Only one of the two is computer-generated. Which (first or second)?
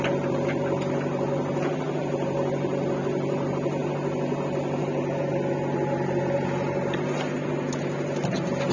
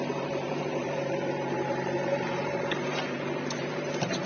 second